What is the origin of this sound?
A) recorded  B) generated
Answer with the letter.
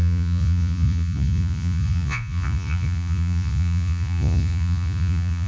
B